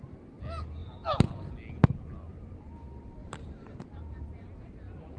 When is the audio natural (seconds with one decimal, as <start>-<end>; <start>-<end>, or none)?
0.0-3.2